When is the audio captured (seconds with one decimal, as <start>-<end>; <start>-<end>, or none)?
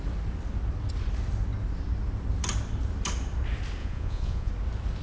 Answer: 0.0-3.8; 4.5-5.0